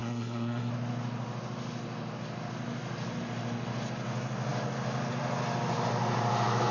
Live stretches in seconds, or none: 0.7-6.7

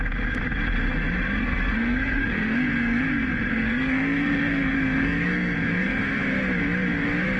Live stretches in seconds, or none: 0.0-1.4; 3.0-3.5; 6.0-7.4

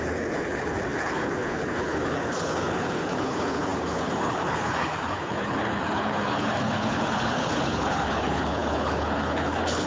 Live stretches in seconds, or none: none

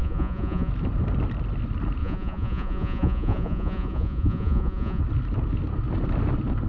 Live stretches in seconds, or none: 0.7-2.0; 5.0-6.7

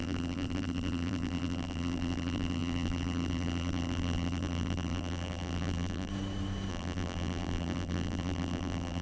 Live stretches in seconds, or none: 6.1-6.7

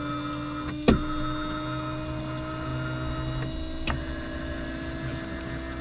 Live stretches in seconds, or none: 0.0-5.8